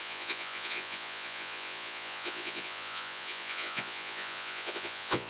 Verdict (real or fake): fake